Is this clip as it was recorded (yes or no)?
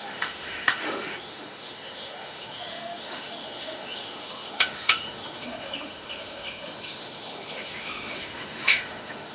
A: no